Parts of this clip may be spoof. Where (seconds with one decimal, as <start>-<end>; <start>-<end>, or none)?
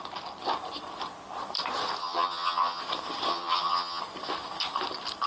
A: 2.0-2.8; 3.3-4.0